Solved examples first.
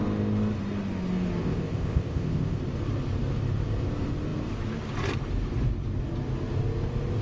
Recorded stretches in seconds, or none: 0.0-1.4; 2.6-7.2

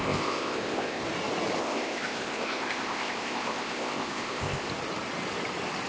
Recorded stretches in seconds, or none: 1.0-1.6; 4.7-5.9

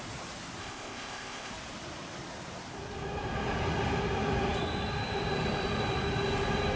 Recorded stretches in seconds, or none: 0.0-0.6; 1.5-6.8